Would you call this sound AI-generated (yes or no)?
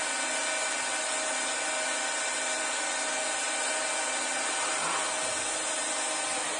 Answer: no